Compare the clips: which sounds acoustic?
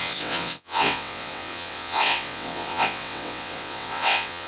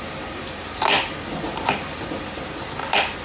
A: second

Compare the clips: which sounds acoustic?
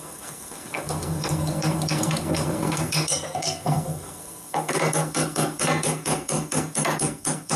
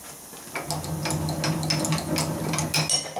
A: second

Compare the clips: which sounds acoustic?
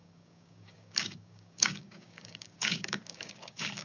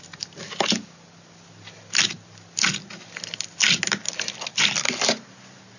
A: second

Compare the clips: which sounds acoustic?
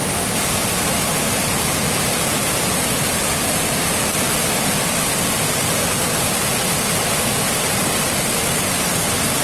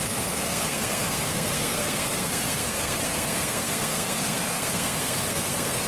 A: first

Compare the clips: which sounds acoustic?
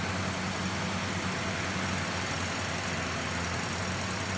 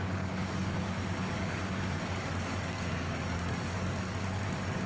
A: first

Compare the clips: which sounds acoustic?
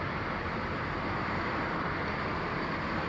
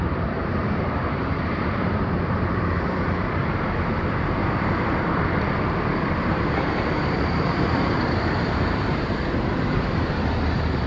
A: first